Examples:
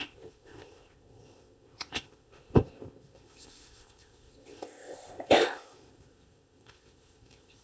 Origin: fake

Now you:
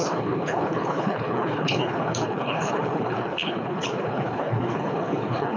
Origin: fake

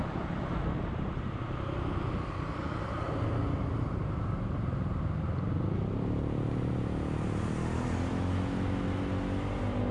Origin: real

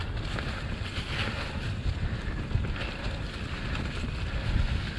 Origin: real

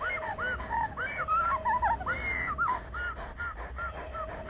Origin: real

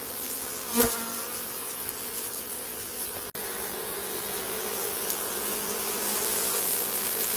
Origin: fake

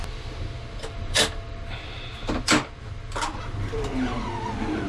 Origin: real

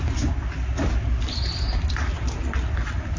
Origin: real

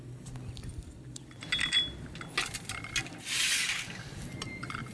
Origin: real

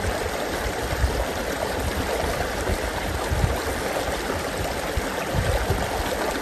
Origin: real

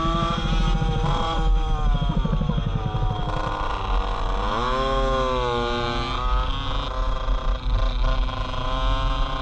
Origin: real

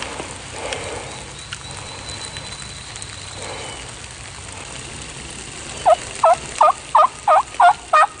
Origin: real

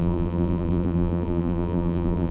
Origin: fake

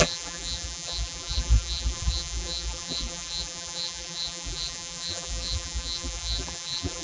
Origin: fake